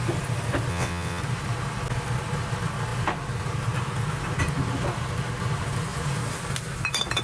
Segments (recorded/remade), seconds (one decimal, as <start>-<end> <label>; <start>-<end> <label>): 0.0-0.7 recorded; 0.7-1.2 remade; 1.2-7.2 recorded